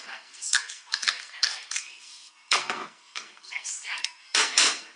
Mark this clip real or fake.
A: fake